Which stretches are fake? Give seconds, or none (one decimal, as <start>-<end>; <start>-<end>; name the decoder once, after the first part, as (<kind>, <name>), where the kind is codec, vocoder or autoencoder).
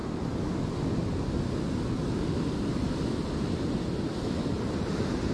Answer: none